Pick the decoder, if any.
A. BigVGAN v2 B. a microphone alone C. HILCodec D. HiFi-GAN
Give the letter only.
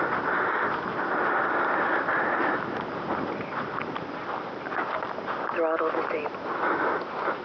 B